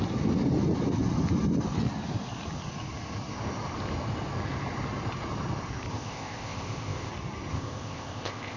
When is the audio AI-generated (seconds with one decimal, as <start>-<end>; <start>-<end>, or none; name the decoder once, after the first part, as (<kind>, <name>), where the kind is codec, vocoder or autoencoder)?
5.9-7.1 (codec, ZipCodec); 7.5-8.6